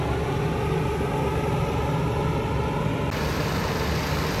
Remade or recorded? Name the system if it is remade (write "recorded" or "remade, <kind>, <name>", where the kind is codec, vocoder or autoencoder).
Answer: recorded